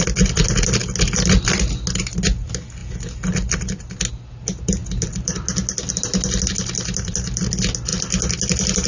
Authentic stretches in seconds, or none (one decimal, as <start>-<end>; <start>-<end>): 0.0-8.9